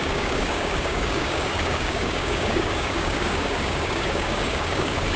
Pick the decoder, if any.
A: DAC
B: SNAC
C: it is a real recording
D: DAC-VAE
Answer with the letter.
A